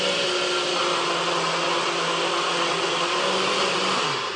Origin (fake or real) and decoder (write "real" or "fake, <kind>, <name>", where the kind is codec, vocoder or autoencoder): real